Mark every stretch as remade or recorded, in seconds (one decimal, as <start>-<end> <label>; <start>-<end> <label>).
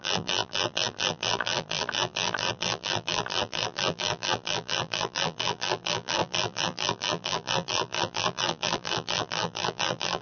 0.0-10.2 remade